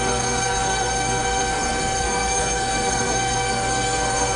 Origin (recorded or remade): remade